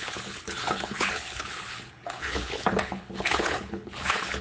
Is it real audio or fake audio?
fake